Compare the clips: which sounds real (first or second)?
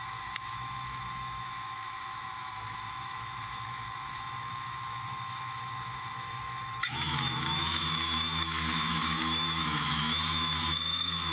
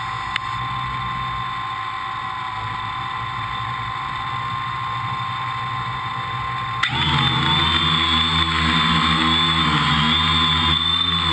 second